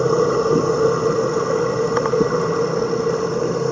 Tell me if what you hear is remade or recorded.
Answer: recorded